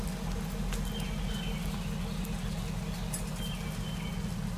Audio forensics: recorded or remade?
recorded